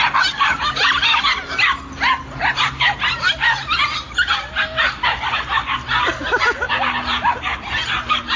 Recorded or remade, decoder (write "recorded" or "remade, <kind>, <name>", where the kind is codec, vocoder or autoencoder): recorded